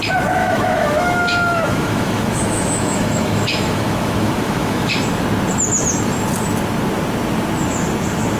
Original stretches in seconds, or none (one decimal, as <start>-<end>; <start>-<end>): 0.0-0.4; 4.9-8.4